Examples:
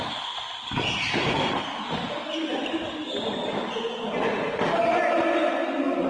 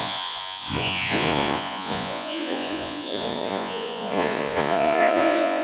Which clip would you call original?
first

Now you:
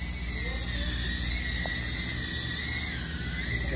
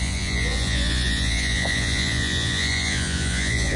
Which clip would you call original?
first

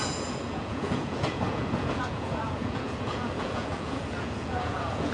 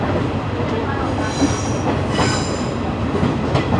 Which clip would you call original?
second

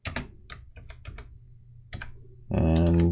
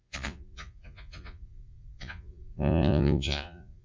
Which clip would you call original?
first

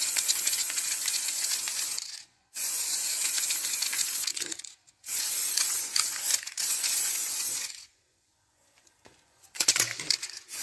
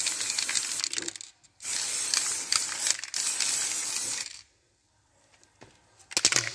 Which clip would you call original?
second